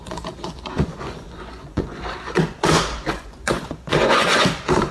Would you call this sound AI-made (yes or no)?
yes